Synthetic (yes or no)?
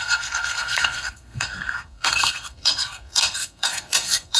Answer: yes